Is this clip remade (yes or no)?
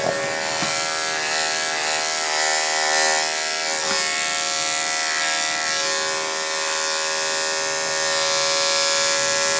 no